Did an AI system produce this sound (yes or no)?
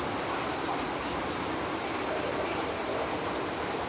no